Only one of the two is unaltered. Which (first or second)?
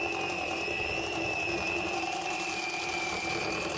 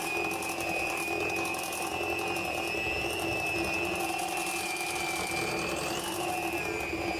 second